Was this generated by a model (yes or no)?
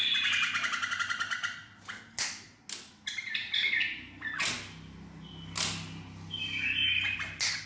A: no